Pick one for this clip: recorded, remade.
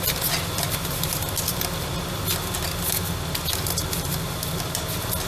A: recorded